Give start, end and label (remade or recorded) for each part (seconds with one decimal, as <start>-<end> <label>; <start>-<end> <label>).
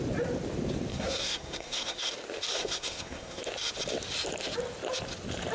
0.0-0.9 recorded; 0.9-2.1 remade; 2.1-2.5 recorded; 2.5-3.4 remade; 3.4-5.5 recorded